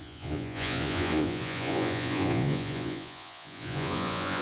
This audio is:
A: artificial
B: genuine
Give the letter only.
A